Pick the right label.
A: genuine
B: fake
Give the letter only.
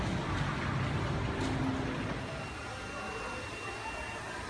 A